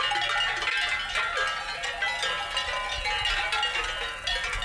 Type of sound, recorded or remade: recorded